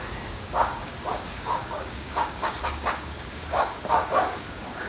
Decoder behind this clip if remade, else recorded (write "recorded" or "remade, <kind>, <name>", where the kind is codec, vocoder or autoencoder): remade, codec, DAC